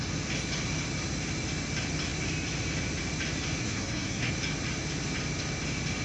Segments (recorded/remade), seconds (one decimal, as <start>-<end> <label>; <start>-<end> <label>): 0.0-3.6 recorded; 3.6-4.3 remade; 4.3-6.0 recorded